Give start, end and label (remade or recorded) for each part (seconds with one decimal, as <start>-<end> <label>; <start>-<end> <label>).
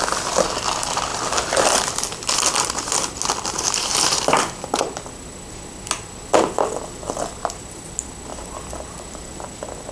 0.0-9.9 recorded